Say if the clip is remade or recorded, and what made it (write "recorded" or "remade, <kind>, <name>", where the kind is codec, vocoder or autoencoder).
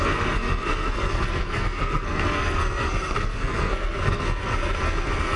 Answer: remade, codec, SNAC